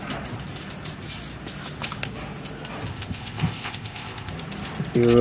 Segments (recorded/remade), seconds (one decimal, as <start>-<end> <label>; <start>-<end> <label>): 0.0-2.9 recorded; 2.9-4.3 remade; 4.3-5.2 recorded